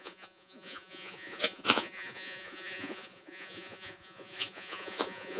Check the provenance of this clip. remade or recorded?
remade